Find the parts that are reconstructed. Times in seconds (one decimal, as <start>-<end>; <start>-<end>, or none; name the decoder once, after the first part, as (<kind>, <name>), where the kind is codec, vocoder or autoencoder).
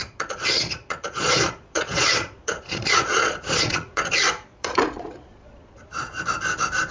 0.0-4.1 (vocoder, Vocos); 4.5-6.2